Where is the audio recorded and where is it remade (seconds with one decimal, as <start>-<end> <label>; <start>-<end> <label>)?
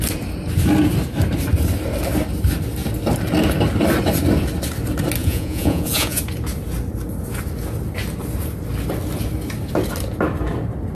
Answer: 0.0-5.2 recorded; 5.2-6.2 remade; 6.2-10.9 recorded